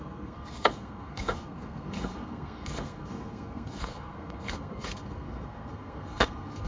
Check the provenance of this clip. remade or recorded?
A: remade